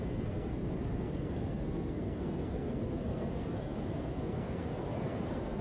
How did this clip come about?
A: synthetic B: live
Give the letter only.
A